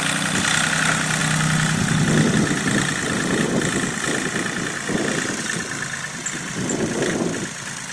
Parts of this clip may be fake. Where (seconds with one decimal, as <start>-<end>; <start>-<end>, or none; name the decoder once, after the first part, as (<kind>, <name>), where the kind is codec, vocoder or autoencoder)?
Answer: none